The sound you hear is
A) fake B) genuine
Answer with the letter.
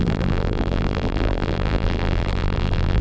A